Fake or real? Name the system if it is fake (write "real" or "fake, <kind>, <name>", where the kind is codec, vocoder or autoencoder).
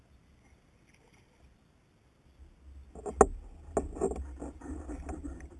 real